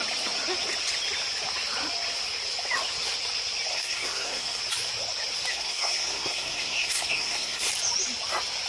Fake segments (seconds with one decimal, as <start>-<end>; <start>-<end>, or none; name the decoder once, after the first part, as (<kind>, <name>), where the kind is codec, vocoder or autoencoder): 3.7-4.6 (codec, SNAC); 5.5-7.7